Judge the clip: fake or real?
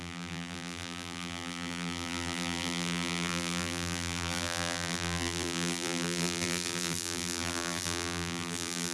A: fake